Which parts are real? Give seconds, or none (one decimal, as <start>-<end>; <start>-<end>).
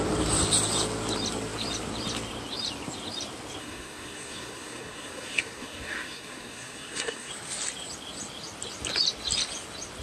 0.0-3.6; 7.3-10.0